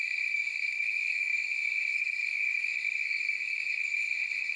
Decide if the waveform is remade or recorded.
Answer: remade